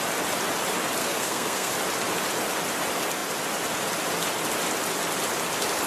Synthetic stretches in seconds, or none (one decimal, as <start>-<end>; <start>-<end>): 1.0-1.7